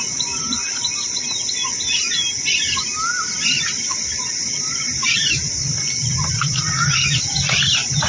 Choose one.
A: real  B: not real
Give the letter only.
A